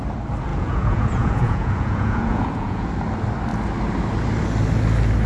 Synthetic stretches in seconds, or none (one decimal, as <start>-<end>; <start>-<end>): 0.5-2.8